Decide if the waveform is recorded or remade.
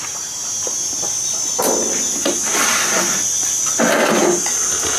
recorded